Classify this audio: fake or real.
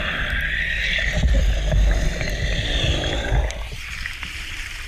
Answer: real